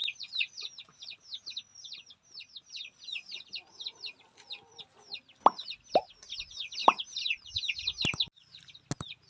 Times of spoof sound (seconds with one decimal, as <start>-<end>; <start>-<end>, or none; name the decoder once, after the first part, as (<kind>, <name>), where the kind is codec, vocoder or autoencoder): none